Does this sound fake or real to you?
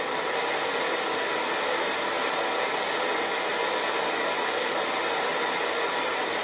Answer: real